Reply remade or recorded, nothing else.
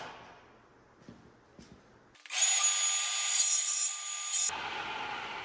recorded